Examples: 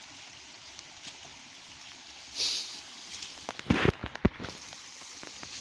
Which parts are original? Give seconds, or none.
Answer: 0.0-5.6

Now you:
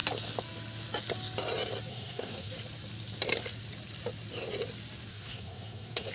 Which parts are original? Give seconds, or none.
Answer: 0.0-1.9; 2.5-5.1

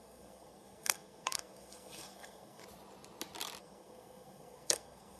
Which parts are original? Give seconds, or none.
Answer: 2.6-3.6

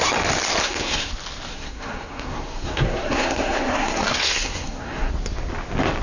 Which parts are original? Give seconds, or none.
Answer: 0.0-0.6; 1.1-1.5; 5.1-6.0

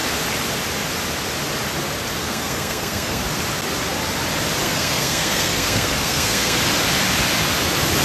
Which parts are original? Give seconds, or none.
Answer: 0.0-2.2; 3.2-4.6; 6.6-8.0

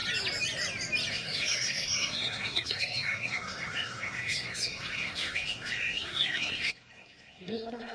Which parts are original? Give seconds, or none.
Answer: 0.0-1.1